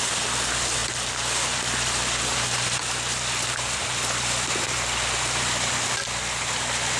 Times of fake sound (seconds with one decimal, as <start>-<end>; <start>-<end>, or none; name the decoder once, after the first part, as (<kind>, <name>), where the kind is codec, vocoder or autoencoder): none